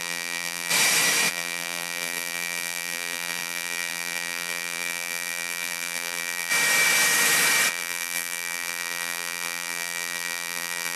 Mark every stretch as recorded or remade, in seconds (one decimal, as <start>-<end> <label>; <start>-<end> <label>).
0.0-0.7 remade; 0.7-1.3 recorded; 1.3-6.5 remade; 6.5-7.7 recorded; 7.7-11.0 remade